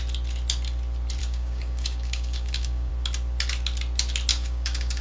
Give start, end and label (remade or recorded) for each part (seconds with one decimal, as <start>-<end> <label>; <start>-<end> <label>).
0.0-1.2 recorded; 1.2-2.9 remade; 2.9-4.3 recorded; 4.3-5.0 remade